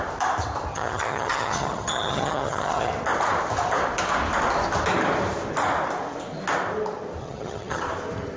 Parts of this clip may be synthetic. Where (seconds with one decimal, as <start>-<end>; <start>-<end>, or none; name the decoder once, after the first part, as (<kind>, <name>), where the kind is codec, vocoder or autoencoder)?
0.7-2.9 (vocoder, HiFi-GAN); 7.2-7.8